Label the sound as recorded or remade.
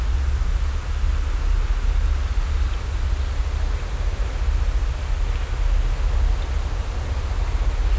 recorded